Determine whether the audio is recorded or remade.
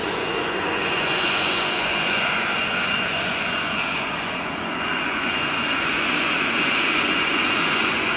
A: remade